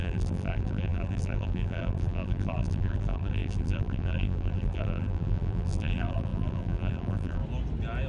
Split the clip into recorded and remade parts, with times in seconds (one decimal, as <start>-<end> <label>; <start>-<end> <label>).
0.0-7.4 remade; 7.4-8.1 recorded